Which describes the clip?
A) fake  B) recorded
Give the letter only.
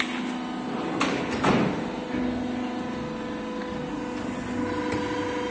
B